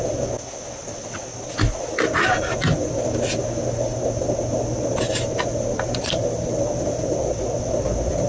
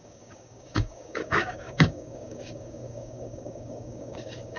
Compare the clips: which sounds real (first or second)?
first